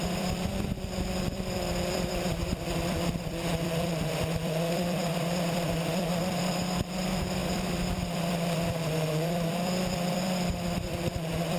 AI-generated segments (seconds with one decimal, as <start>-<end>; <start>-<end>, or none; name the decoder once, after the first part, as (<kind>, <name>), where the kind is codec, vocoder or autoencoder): 0.0-11.6 (vocoder, BigVGAN v2)